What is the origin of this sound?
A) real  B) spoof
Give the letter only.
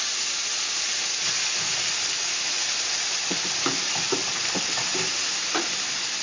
A